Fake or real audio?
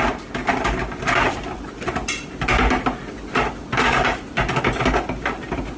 real